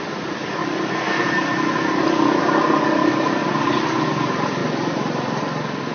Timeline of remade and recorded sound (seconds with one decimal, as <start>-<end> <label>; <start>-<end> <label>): 0.0-3.0 recorded; 3.0-3.7 remade; 3.7-4.6 recorded; 4.6-5.4 remade; 5.4-5.9 recorded